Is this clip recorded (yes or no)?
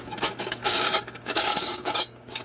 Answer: no